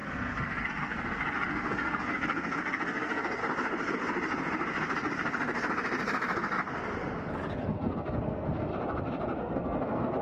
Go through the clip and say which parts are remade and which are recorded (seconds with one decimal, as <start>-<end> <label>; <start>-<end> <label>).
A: 0.0-3.4 remade; 3.4-7.6 recorded; 7.6-8.7 remade; 8.7-9.4 recorded; 9.4-10.2 remade